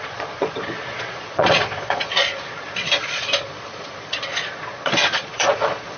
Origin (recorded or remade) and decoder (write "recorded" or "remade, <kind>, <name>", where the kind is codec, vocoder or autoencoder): remade, vocoder, Vocos